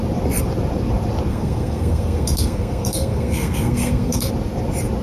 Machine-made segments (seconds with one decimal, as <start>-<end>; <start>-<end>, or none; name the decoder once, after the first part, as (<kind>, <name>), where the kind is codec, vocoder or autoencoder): 1.3-4.3 (codec, SNAC)